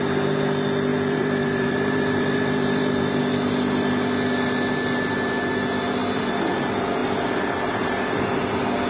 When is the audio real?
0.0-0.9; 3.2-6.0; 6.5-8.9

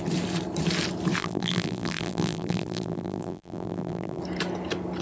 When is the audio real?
0.0-1.2; 4.2-5.0

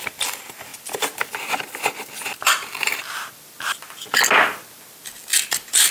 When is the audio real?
0.0-5.9

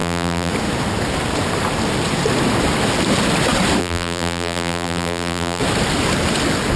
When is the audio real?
0.5-3.8; 5.6-6.8

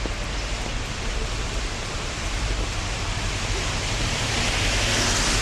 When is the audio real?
0.0-1.1; 4.3-5.4

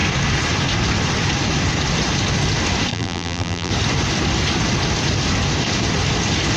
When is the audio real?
0.0-2.9; 3.7-6.6